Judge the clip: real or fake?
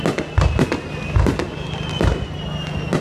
real